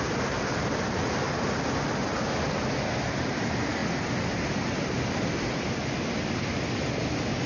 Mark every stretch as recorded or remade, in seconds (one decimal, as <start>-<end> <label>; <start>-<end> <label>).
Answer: 0.0-7.5 recorded